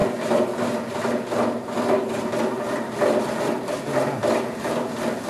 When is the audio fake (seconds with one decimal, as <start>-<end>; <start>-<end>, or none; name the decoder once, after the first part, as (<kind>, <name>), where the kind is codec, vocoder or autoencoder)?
none